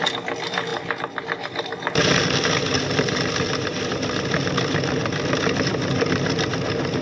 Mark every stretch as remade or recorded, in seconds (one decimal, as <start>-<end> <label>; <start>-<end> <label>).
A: 0.0-7.0 recorded